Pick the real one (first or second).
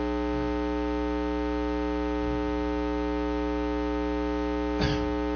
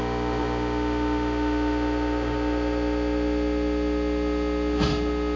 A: first